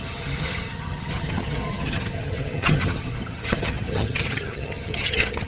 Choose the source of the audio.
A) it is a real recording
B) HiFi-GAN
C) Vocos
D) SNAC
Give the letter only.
B